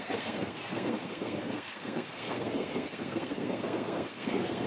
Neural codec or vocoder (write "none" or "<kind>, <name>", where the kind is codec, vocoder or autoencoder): codec, SNAC